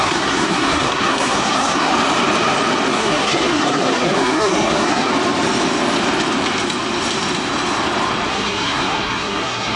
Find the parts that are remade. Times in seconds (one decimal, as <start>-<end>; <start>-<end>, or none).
0.0-1.9; 2.9-5.1; 8.3-9.8